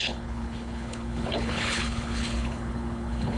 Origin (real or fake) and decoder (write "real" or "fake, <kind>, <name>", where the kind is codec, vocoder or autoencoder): fake, codec, HILCodec